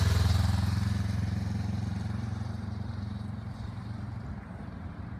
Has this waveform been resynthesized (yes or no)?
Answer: yes